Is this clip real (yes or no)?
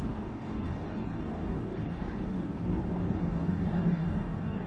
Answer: no